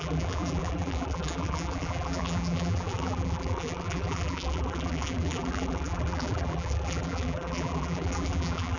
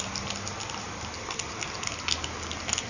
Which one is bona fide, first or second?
second